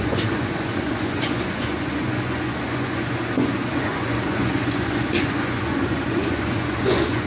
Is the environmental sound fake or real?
fake